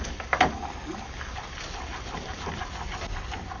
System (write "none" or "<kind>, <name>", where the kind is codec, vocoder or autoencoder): none